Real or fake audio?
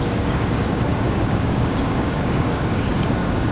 fake